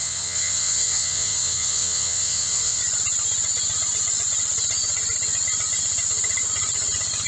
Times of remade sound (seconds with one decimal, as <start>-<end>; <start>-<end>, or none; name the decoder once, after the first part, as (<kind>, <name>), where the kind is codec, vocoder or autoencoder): 0.0-2.8 (vocoder, WaveNeXt)